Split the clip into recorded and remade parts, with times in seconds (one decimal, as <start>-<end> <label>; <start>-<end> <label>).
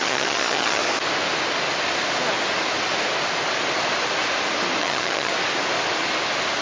0.0-0.8 remade; 0.8-4.8 recorded; 4.8-5.3 remade; 5.3-6.6 recorded